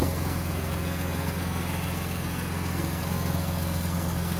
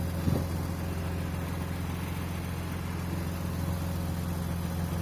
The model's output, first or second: first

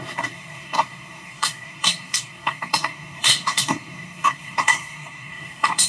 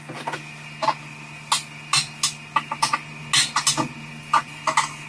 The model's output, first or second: first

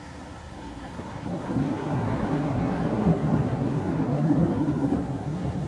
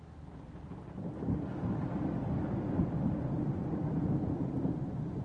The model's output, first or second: first